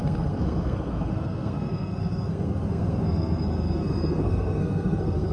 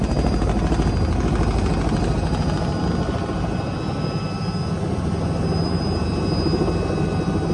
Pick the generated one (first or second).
first